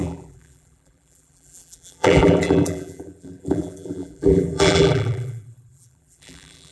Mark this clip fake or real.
fake